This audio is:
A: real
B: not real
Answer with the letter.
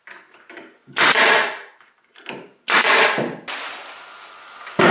A